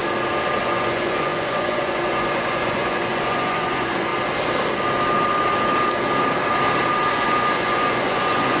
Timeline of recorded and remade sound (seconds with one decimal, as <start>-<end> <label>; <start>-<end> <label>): 0.0-0.6 recorded; 0.6-4.1 remade; 4.1-7.1 recorded; 7.1-8.6 remade